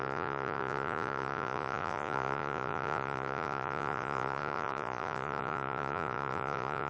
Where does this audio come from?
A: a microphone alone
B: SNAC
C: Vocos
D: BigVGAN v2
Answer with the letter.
C